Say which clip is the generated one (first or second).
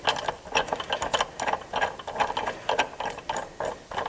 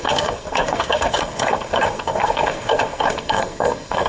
second